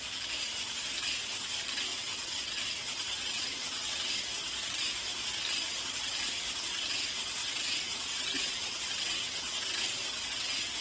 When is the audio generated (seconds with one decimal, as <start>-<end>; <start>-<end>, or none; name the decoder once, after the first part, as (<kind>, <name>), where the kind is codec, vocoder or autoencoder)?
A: 1.9-4.1 (vocoder, WaveNeXt); 7.4-9.8